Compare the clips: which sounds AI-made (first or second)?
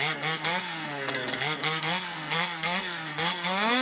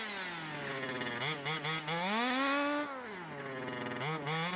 first